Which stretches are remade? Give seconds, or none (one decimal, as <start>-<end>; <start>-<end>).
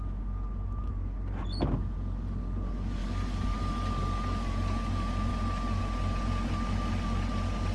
none